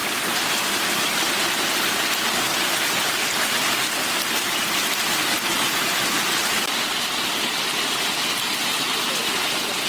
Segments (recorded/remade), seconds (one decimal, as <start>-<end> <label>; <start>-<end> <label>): 0.0-9.9 recorded